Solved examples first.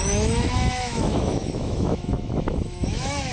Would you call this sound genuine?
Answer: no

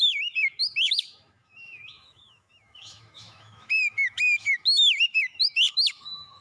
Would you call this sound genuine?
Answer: no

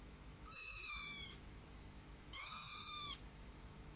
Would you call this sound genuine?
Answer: no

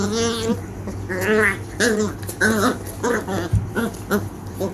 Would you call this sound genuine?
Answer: yes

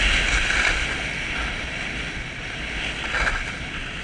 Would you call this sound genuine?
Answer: yes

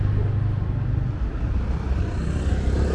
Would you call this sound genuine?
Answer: yes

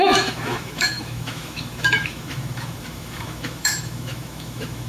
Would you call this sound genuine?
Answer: no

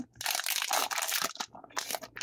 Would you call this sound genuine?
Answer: yes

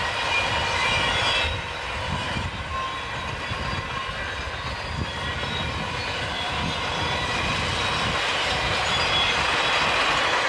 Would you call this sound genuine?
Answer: yes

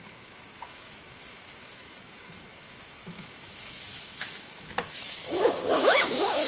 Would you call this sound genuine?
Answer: no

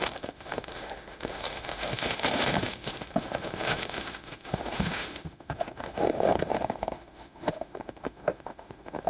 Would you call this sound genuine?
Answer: no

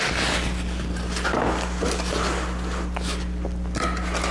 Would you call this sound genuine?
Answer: yes